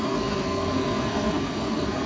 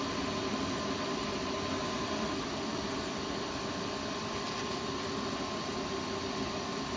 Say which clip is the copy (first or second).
first